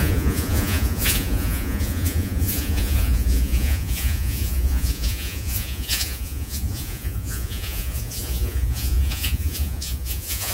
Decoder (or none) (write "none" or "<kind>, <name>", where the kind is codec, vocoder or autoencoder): vocoder, Vocos